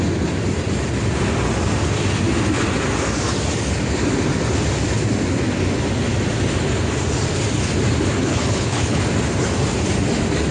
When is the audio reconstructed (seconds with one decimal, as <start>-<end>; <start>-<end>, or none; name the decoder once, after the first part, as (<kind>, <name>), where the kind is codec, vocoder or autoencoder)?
8.2-9.0 (codec, HILCodec)